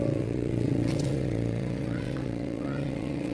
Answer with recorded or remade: remade